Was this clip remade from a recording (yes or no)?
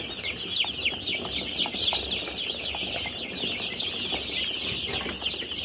no